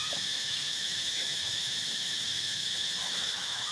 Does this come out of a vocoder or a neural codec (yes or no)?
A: yes